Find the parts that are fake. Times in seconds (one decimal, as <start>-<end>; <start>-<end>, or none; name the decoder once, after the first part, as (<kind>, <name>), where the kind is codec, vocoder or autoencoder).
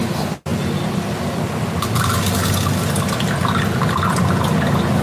none